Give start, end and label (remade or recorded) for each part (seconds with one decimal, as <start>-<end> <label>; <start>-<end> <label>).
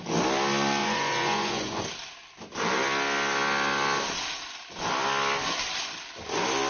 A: 0.0-0.8 recorded; 0.8-1.8 remade; 1.8-6.7 recorded